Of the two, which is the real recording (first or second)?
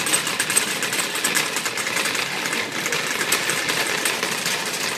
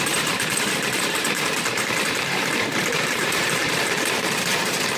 first